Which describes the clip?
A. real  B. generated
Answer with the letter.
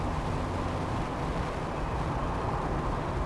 A